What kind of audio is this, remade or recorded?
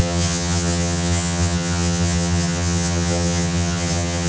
remade